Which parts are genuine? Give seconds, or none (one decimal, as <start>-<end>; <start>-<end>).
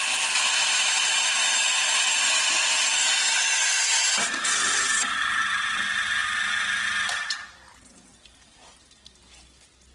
0.0-9.9